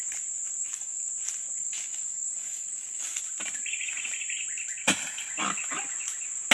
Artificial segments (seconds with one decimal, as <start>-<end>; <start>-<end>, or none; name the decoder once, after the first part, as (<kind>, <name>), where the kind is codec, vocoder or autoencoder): 0.6-1.1 (codec, DAC); 1.6-3.2